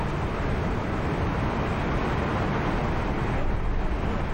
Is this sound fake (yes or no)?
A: no